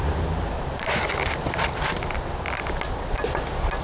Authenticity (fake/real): real